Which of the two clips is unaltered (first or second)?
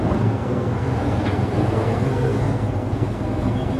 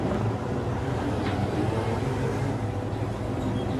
second